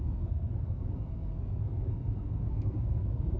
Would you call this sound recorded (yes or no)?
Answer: no